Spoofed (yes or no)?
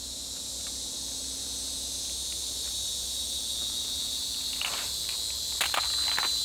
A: no